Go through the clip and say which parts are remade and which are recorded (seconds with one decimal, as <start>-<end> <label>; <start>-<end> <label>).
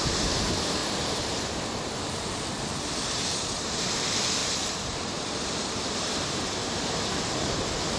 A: 0.0-0.8 recorded; 0.8-3.8 remade; 3.8-4.4 recorded; 4.4-6.1 remade; 6.1-6.6 recorded; 6.6-8.0 remade